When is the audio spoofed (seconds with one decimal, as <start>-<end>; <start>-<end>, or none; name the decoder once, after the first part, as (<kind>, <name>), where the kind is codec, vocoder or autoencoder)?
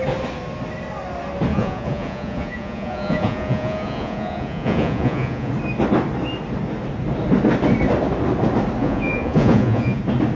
1.5-5.5 (vocoder, Vocos); 8.8-10.0